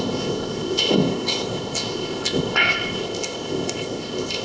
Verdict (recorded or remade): remade